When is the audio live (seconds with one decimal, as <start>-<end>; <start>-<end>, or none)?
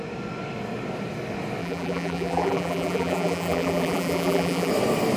0.0-1.6; 4.7-5.2